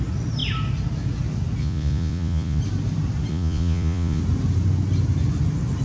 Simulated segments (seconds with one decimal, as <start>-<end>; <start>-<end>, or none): 1.6-2.6; 3.3-4.2